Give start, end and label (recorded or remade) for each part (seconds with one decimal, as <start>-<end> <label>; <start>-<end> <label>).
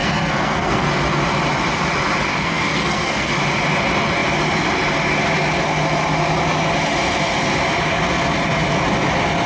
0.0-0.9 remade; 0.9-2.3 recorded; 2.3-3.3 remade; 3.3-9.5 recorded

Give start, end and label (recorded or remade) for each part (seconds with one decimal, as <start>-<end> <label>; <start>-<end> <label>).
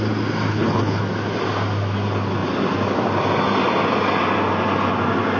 0.0-0.5 recorded; 0.5-1.0 remade; 1.0-5.4 recorded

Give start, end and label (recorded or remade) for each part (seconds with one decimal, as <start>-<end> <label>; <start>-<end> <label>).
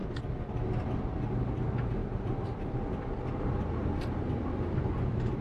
0.0-1.0 remade; 1.0-2.0 recorded; 2.0-2.7 remade; 2.7-3.8 recorded; 3.8-5.4 remade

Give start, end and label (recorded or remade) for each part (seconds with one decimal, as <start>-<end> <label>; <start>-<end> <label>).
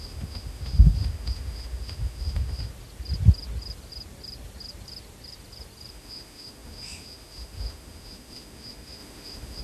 0.0-2.7 remade; 2.7-5.9 recorded; 5.9-9.6 remade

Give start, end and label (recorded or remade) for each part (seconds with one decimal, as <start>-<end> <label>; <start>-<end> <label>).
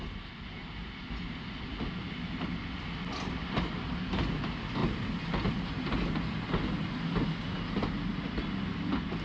0.0-9.2 recorded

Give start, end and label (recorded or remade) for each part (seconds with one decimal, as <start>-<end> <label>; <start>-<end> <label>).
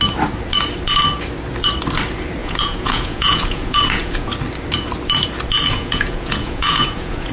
0.0-2.4 recorded; 2.4-4.3 remade; 4.3-5.7 recorded; 5.7-7.3 remade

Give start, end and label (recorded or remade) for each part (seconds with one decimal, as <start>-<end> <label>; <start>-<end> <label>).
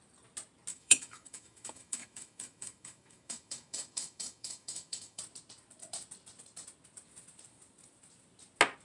0.0-0.7 recorded; 0.7-5.2 remade; 5.2-8.8 recorded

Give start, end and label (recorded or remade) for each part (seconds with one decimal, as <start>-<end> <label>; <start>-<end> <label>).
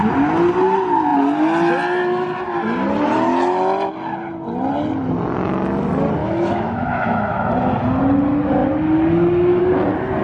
0.0-6.2 recorded; 6.2-7.5 remade; 7.5-10.2 recorded